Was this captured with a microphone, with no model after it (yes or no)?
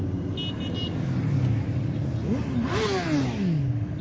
yes